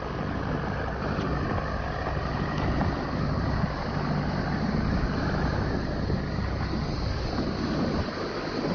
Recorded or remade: recorded